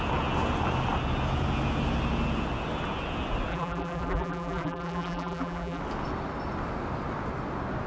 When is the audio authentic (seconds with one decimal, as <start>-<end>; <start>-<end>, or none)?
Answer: 0.0-3.5; 5.8-7.9